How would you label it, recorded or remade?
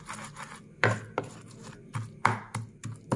recorded